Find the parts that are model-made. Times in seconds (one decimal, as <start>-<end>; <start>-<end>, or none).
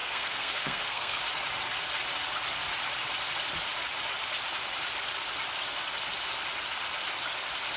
0.0-1.2